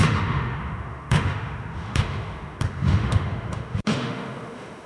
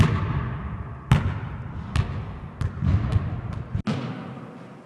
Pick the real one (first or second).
second